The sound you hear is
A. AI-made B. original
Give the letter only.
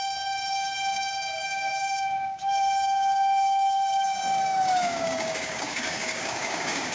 A